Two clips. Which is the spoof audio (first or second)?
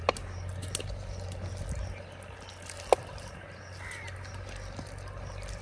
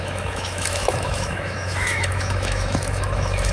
second